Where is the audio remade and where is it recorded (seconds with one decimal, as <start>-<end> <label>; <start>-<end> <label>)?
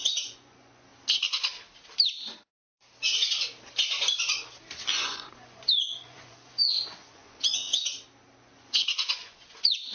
0.0-0.9 remade; 0.9-4.9 recorded; 4.9-7.8 remade; 7.8-8.4 recorded; 8.4-9.9 remade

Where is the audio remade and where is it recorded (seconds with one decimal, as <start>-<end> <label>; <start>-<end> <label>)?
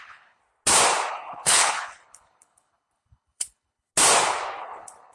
0.0-0.4 remade; 0.4-1.1 recorded; 1.1-3.9 remade; 3.9-4.6 recorded; 4.6-5.1 remade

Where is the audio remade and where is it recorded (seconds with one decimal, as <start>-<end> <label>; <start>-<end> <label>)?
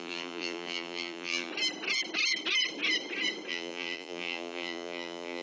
0.0-1.5 remade; 1.5-3.5 recorded; 3.5-5.4 remade